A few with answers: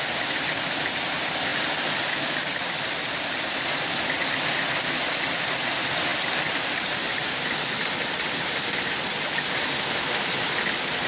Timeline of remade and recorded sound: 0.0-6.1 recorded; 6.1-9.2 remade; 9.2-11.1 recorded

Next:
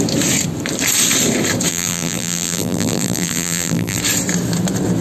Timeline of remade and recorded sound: 0.0-1.7 recorded; 1.7-4.0 remade; 4.0-5.0 recorded

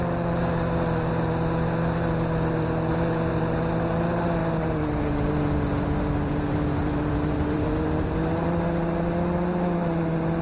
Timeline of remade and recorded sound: 0.0-10.4 recorded